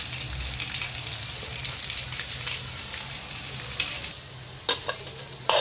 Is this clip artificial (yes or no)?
no